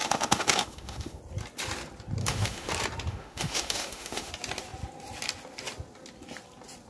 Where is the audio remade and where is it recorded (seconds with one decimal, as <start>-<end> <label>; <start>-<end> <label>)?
0.0-1.2 remade; 1.2-2.2 recorded; 2.2-2.7 remade; 2.7-3.1 recorded; 3.1-4.3 remade; 4.3-6.9 recorded